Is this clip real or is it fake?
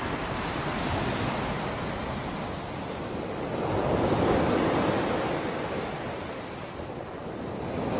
real